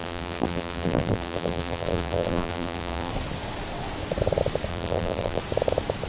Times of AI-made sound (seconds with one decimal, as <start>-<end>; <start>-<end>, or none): 0.0-3.1; 4.7-5.4

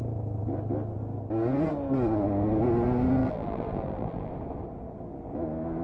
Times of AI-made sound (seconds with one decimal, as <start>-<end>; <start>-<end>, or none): 3.2-4.3

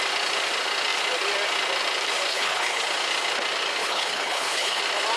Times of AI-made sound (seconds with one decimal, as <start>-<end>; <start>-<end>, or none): 2.3-2.8; 3.8-4.8

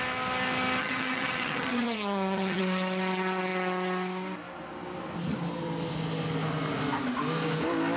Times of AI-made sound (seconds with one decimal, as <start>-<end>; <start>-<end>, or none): 0.8-2.6